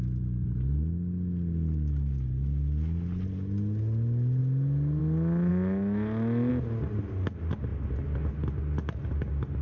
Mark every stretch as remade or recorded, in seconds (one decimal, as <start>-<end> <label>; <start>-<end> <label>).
0.0-5.5 recorded; 5.5-6.5 remade; 6.5-9.6 recorded